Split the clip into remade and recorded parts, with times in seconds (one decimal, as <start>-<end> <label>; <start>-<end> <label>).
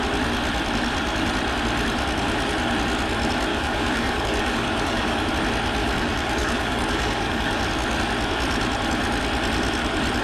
0.0-3.5 recorded; 3.5-5.3 remade; 5.3-5.8 recorded; 5.8-7.6 remade; 7.6-10.2 recorded